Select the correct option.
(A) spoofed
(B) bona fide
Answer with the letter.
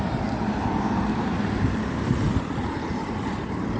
B